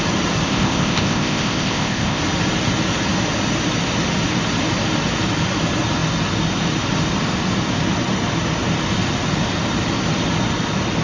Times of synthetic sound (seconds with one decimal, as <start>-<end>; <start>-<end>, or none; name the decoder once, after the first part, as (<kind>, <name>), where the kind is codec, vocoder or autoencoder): 0.5-2.2 (codec, ZipCodec)